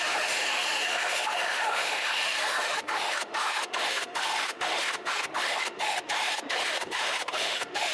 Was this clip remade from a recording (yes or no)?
yes